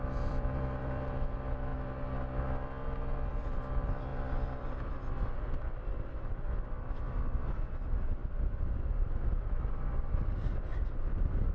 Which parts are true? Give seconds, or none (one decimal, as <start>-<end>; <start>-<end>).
1.7-3.3; 8.2-9.7